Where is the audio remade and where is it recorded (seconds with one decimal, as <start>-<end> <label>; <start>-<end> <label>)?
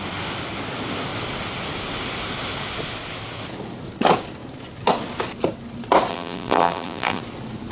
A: 0.0-6.1 recorded; 6.1-7.2 remade; 7.2-7.7 recorded